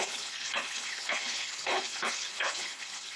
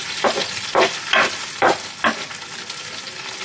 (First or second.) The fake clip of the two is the first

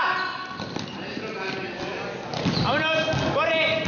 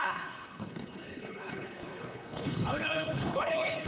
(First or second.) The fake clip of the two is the second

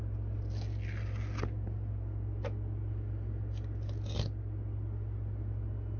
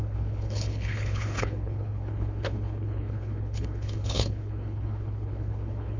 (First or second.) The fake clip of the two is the second